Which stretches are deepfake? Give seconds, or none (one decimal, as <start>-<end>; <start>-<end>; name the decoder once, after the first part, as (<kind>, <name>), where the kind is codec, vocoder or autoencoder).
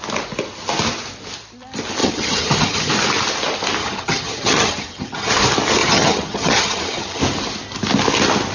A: 2.0-2.9 (vocoder, HiFi-GAN); 3.8-5.3; 5.8-7.2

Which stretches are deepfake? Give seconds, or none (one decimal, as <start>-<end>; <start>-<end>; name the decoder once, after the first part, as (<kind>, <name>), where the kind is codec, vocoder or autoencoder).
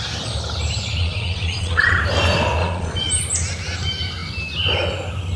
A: 1.0-2.0 (vocoder, Vocos); 2.6-3.1